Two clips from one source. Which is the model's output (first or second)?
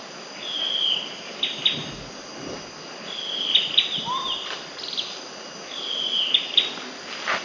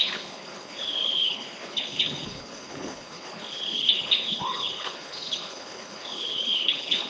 second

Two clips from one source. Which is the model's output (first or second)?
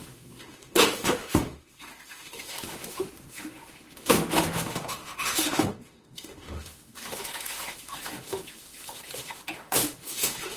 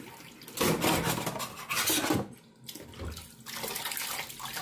first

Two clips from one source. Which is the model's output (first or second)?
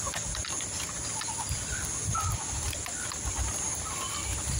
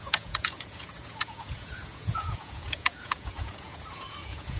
second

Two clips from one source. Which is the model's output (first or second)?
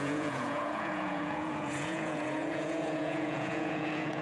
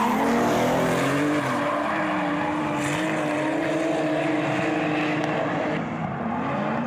first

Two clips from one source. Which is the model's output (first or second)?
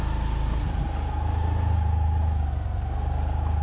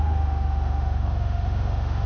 second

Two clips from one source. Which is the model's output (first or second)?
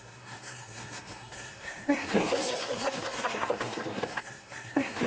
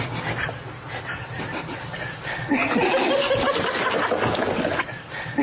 first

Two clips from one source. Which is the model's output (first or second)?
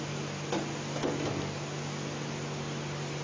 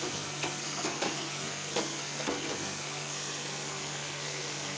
second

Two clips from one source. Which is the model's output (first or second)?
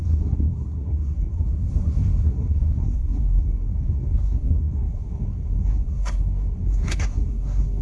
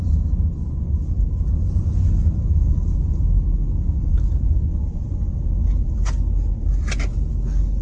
first